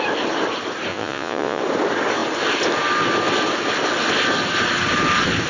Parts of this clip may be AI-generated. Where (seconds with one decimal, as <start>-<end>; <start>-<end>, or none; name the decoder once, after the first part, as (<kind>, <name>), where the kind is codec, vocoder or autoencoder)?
0.9-1.6 (vocoder, Vocos)